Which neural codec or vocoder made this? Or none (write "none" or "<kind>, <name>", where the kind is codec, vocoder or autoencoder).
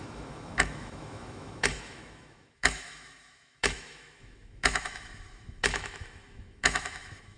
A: autoencoder, DAC-VAE